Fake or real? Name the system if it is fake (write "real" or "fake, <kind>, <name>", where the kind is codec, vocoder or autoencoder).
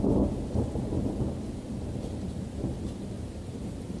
real